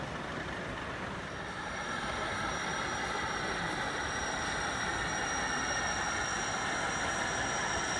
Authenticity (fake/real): real